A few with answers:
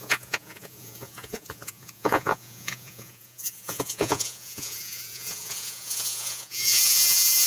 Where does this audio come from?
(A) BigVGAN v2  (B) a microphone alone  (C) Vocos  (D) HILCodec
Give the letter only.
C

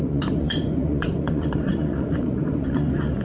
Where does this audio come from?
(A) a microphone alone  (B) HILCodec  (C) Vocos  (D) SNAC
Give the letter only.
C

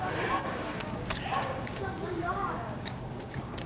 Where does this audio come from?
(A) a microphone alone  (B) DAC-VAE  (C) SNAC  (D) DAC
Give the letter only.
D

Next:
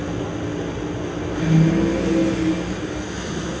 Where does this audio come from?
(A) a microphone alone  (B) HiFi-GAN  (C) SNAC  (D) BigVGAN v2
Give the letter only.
A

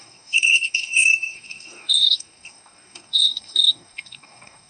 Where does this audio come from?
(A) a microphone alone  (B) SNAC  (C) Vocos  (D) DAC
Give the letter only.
D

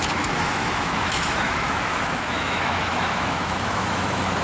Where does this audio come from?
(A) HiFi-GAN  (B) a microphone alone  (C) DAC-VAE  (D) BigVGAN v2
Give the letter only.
C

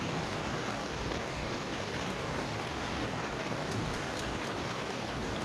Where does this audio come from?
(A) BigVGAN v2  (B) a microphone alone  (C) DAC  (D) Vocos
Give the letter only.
C